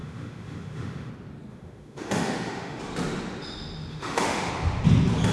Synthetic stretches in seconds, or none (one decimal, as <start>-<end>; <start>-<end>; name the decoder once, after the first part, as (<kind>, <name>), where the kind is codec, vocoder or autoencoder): 0.0-1.1 (autoencoder, DAC-VAE); 1.5-2.8; 3.9-4.5